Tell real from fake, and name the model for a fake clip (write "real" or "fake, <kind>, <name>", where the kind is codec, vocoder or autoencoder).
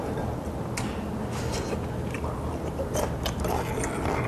real